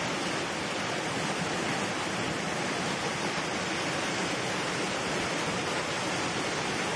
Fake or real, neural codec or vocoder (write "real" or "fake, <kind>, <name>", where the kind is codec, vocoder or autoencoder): real